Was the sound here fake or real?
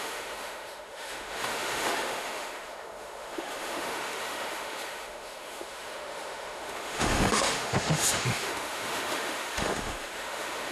fake